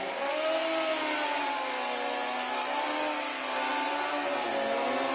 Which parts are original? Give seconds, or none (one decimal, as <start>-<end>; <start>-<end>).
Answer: 0.0-5.1